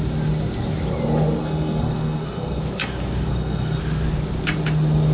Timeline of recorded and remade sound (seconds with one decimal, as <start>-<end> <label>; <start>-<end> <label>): 0.0-1.4 recorded; 1.4-2.6 remade; 2.6-3.3 recorded; 3.3-3.8 remade; 3.8-5.1 recorded